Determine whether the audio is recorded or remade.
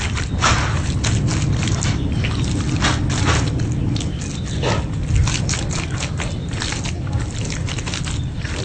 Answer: recorded